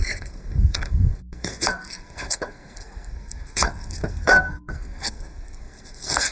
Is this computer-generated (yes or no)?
yes